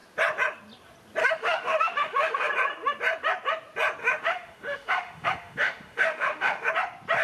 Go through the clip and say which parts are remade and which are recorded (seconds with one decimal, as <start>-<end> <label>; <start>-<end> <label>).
0.0-1.2 recorded; 1.2-2.5 remade; 2.5-4.0 recorded; 4.0-6.7 remade; 6.7-7.2 recorded